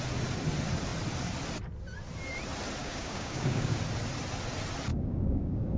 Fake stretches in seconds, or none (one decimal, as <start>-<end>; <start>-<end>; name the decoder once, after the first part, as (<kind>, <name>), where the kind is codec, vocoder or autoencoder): 2.8-3.8 (codec, DAC); 4.9-5.8